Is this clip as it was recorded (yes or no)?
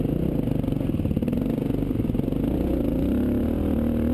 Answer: yes